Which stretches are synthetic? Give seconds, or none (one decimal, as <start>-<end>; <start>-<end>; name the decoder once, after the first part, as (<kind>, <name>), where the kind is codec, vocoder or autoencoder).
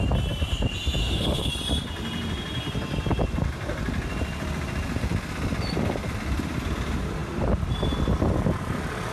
1.0-1.5 (autoencoder, DAC-VAE)